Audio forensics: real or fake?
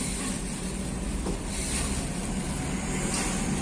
real